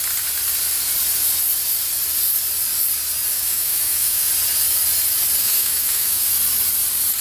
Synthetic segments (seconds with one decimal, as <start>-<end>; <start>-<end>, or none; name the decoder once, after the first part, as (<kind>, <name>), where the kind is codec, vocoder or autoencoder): 3.3-4.3 (autoencoder, DAC-VAE); 5.4-6.3